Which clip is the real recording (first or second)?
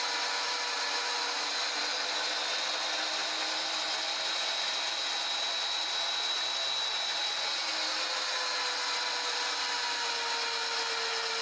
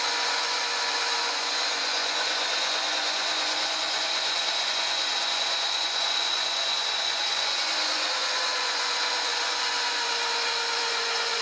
first